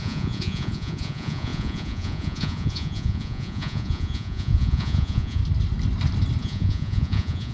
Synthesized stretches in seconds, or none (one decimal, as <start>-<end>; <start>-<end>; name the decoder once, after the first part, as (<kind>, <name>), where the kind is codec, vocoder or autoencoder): 0.0-5.4 (vocoder, Vocos); 6.4-7.5